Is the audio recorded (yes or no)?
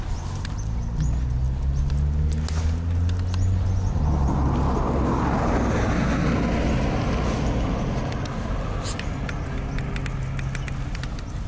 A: yes